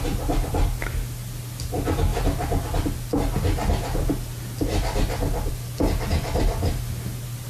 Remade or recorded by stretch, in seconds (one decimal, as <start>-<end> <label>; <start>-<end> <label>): 0.0-7.5 recorded